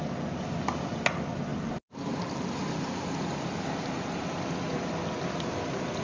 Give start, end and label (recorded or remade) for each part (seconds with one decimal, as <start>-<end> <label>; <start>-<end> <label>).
0.0-6.0 recorded